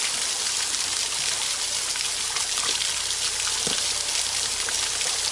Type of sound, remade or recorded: recorded